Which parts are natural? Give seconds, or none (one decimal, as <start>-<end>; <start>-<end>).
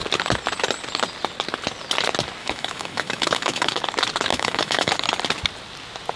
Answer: 0.0-2.4; 3.8-4.3; 4.9-6.2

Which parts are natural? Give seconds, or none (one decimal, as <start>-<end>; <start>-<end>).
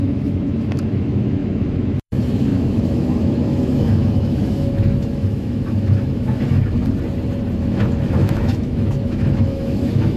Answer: 6.8-7.6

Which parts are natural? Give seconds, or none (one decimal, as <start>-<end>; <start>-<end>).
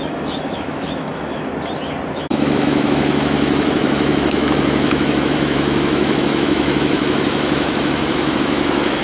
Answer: 1.5-2.1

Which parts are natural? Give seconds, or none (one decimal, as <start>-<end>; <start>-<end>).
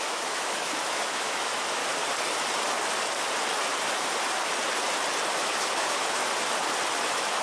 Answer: 1.8-5.3; 6.2-7.0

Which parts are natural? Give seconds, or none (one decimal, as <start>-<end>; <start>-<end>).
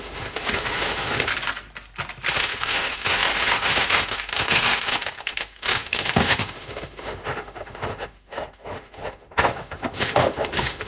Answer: 1.3-2.3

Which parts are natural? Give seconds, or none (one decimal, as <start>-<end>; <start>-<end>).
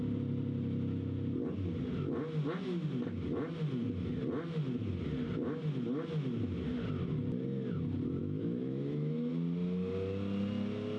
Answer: 0.0-8.2; 9.3-11.0